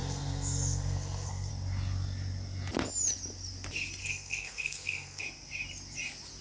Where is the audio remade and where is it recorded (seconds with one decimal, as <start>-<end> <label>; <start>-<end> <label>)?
0.0-1.5 remade; 1.5-4.0 recorded; 4.0-5.2 remade; 5.2-6.4 recorded